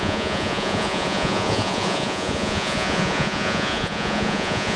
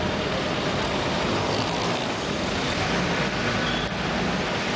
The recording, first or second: second